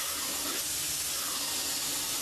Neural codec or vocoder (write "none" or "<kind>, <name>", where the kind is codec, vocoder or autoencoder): none